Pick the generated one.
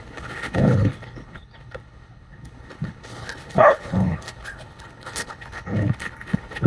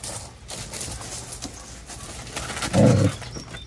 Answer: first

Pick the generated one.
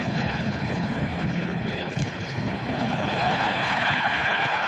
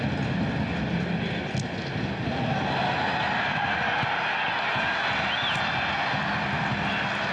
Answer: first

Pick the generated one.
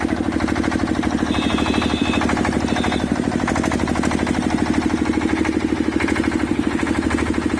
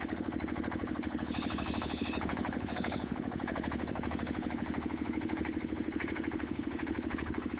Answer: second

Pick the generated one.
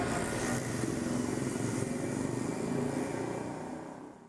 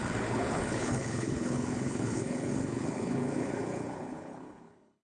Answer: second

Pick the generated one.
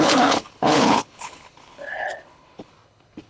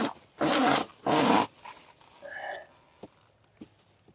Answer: first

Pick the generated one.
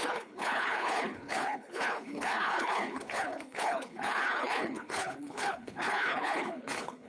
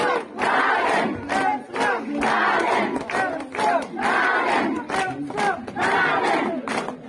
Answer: first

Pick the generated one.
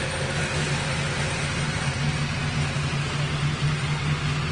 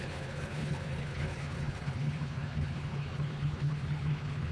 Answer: second